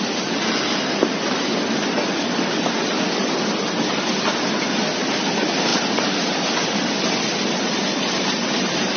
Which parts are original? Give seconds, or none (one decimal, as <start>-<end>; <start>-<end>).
0.0-9.0